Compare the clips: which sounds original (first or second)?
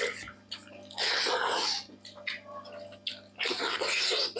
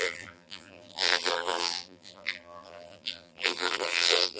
first